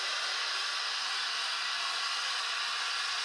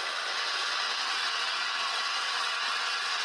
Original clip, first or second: first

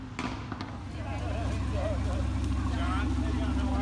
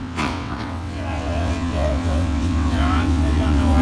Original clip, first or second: first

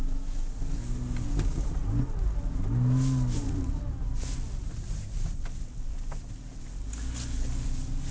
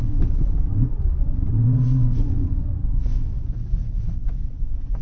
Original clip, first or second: first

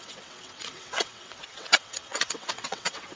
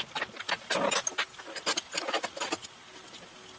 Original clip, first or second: second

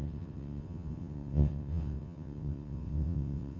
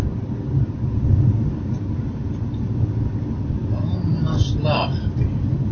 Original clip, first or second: second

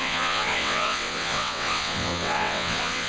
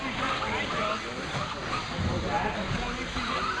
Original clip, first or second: second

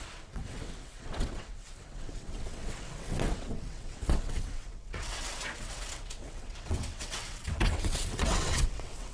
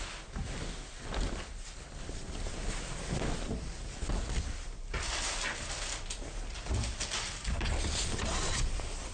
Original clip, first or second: second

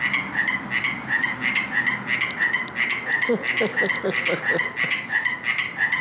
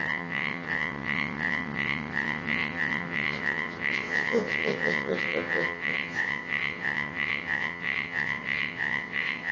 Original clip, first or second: first